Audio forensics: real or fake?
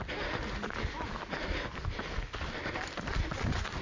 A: real